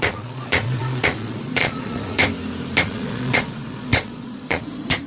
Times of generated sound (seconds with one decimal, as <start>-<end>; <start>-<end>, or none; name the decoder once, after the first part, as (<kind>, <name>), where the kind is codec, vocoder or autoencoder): 0.0-2.2 (vocoder, Vocos); 2.8-5.1